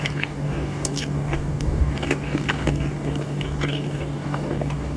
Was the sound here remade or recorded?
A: remade